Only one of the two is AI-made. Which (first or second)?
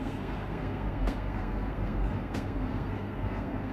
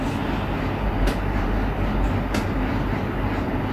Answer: first